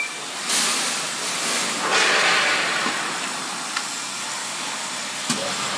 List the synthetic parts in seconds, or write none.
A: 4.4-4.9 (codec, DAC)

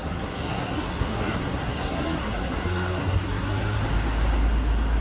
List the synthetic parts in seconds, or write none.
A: 0.0-3.8 (codec, SNAC)

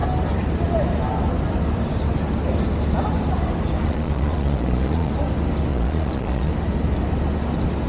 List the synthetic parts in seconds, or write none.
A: 3.8-5.1 (vocoder, Vocos); 5.7-6.5

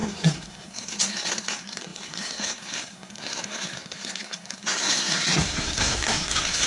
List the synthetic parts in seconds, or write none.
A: 0.0-6.7 (codec, SNAC)

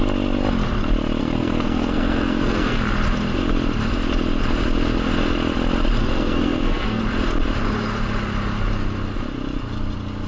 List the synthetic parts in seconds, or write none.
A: 1.2-2.8 (codec, SNAC); 6.0-7.0

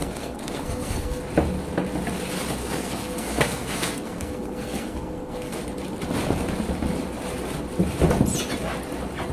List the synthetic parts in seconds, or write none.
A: 0.0-1.2 (codec, SNAC); 2.6-5.6

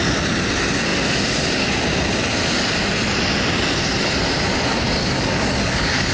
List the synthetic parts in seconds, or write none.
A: 5.0-6.1 (codec, DAC)